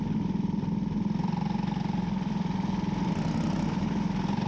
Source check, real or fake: real